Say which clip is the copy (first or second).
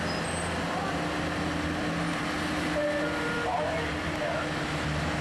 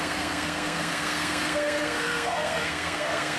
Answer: second